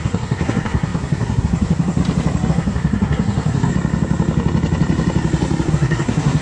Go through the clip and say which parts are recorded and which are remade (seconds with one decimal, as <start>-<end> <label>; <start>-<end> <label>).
0.0-2.0 remade; 2.0-2.5 recorded; 2.5-3.7 remade; 3.7-5.7 recorded; 5.7-6.4 remade